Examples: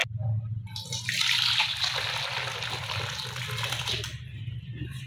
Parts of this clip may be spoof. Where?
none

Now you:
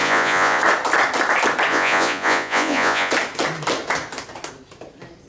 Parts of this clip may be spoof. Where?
0.0-0.6 (vocoder, Vocos); 1.7-3.1

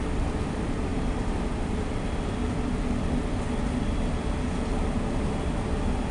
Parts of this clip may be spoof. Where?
none

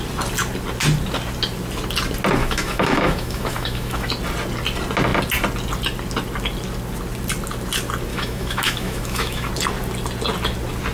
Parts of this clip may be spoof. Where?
2.4-4.1 (autoencoder, DAC-VAE); 8.1-9.5